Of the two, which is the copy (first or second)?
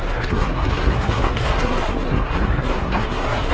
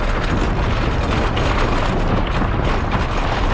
first